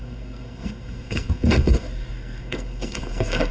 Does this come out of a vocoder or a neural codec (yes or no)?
yes